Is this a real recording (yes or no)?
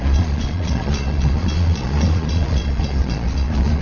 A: no